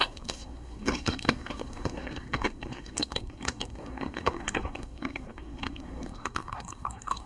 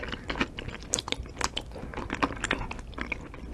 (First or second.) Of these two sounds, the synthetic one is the first